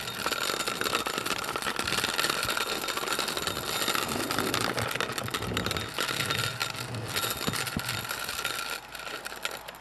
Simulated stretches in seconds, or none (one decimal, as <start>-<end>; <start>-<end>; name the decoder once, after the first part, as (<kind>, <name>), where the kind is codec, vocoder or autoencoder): none